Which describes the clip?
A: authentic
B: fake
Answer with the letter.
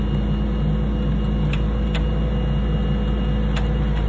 A